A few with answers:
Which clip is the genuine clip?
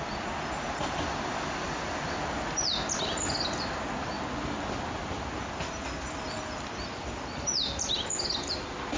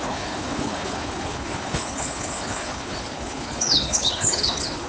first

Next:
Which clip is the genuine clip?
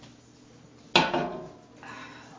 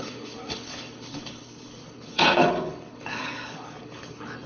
first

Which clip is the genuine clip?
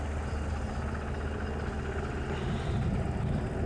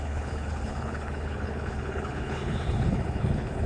first